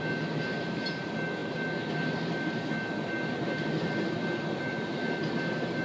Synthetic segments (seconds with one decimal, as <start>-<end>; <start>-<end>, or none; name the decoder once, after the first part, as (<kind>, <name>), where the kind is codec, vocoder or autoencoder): none